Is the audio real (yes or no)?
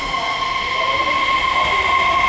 yes